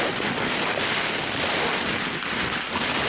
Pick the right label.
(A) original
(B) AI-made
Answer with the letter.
A